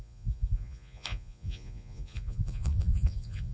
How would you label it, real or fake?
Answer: fake